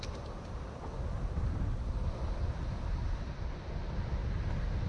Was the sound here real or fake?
real